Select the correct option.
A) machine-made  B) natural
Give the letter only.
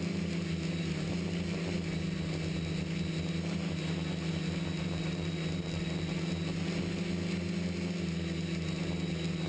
B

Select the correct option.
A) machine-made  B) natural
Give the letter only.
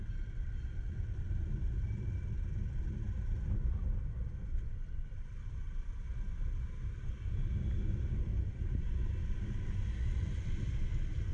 B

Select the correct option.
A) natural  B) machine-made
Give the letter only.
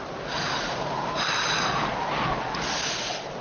A